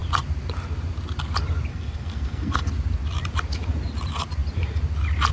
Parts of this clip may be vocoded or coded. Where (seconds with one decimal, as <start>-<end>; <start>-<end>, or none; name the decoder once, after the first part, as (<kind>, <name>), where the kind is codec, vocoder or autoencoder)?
1.7-2.7 (codec, SNAC)